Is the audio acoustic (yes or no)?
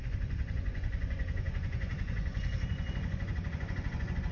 no